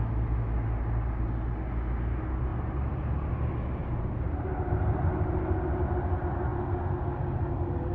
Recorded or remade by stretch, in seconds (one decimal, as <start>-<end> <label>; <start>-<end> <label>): 0.0-2.5 recorded; 2.5-3.3 remade; 3.3-3.8 recorded; 3.8-4.6 remade; 4.6-7.9 recorded